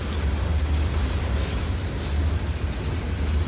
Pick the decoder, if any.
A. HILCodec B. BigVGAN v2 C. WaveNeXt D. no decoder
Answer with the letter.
D